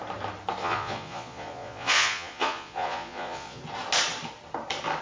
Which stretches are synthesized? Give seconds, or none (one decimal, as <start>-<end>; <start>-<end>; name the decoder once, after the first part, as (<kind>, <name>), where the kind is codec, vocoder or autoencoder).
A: 0.6-3.6 (vocoder, Vocos)